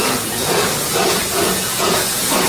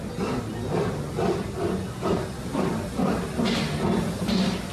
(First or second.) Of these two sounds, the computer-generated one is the first